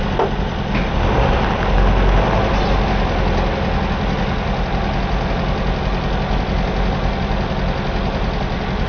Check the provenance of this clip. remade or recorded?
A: recorded